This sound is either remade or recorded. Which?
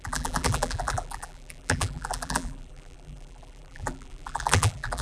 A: remade